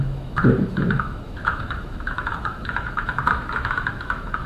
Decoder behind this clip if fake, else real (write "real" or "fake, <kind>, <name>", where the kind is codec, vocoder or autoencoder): fake, autoencoder, DAC-VAE